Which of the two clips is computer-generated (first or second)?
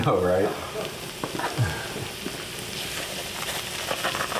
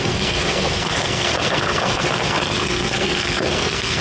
second